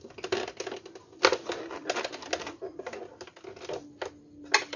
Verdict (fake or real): real